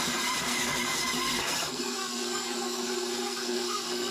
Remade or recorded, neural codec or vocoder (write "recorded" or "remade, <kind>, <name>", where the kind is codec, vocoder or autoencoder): remade, codec, SNAC